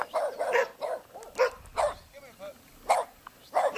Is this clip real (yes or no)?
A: yes